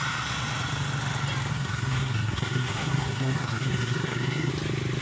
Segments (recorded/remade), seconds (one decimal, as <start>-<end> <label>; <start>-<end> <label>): 0.0-1.5 recorded; 1.5-4.5 remade; 4.5-5.0 recorded